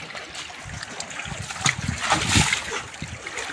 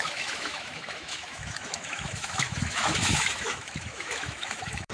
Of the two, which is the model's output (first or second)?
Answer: second